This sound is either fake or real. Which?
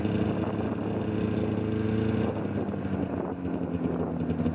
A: real